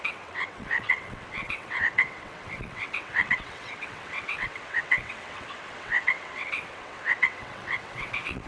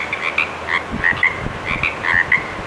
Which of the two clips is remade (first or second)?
first